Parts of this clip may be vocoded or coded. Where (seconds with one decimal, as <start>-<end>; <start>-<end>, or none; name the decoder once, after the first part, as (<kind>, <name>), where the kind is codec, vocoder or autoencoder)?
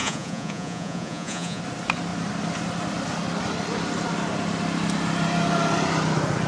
0.0-1.6 (vocoder, Vocos)